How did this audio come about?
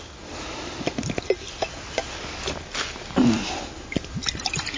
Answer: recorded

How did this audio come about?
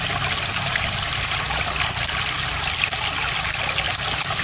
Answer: recorded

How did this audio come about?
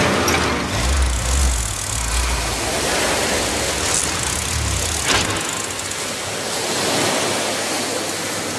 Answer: recorded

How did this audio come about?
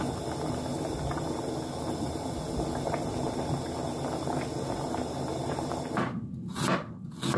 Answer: recorded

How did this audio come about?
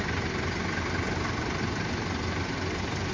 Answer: recorded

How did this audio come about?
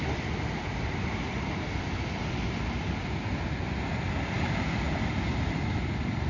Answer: recorded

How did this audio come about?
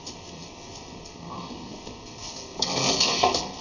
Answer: remade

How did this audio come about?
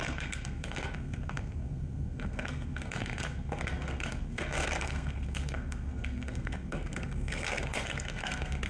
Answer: remade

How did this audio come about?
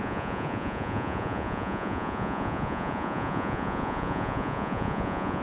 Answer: remade